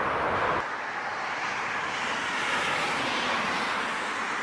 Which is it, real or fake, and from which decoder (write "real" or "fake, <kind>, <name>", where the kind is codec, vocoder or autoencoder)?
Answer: real